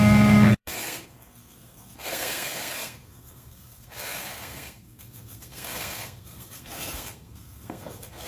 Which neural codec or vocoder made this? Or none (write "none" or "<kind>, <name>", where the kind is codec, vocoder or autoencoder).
codec, SNAC